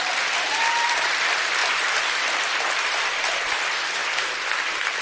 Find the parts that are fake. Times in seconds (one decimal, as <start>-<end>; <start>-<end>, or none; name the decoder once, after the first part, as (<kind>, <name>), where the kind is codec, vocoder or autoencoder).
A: 0.0-4.0 (vocoder, BigVGAN v2); 4.6-5.0